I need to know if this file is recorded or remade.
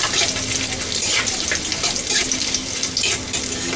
recorded